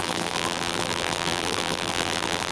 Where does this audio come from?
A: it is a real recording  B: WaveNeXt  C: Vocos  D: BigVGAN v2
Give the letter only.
D